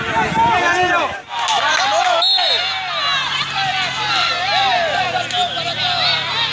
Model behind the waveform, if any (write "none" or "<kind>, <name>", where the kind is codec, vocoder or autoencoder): none